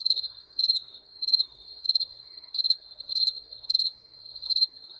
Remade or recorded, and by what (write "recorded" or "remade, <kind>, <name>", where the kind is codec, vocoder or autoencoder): remade, codec, SNAC